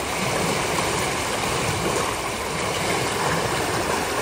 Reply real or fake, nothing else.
real